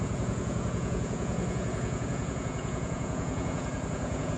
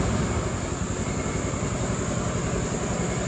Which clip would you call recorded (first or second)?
second